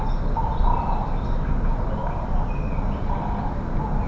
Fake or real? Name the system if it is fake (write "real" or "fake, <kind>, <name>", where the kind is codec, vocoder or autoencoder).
real